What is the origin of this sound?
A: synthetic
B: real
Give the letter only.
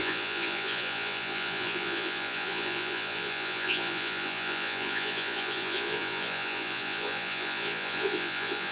A